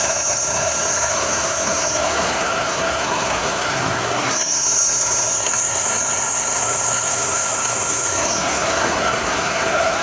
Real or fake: fake